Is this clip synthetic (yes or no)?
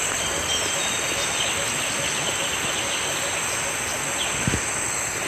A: no